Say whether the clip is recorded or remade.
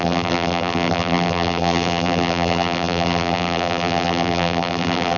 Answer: remade